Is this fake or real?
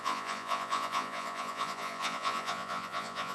fake